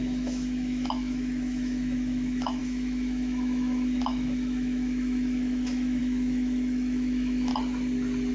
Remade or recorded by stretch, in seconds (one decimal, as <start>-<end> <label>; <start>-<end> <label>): 0.0-7.5 remade; 7.5-8.3 recorded